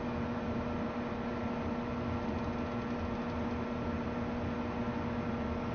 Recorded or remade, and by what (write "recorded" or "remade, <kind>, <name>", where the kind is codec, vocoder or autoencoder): recorded